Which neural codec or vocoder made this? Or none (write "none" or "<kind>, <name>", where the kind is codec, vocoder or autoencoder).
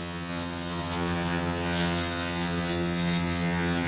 vocoder, HiFi-GAN